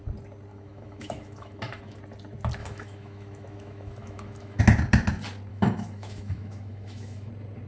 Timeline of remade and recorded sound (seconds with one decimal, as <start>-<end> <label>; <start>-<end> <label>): 0.0-0.5 recorded; 0.5-2.0 remade; 2.0-2.6 recorded; 2.6-4.6 remade; 4.6-5.5 recorded; 5.5-7.3 remade; 7.3-7.7 recorded